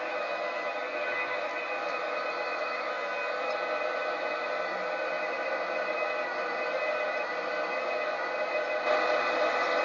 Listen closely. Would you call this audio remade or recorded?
recorded